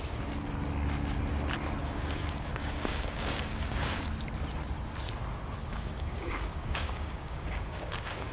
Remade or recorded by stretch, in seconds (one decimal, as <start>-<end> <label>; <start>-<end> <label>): 0.0-1.8 recorded; 1.8-4.0 remade; 4.0-5.7 recorded; 5.7-8.3 remade